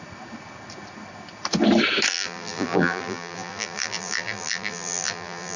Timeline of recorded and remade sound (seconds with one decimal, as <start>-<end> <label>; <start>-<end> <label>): 0.0-2.1 recorded; 2.1-5.6 remade